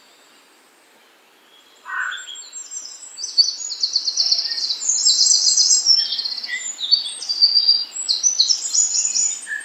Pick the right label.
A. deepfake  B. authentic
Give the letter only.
B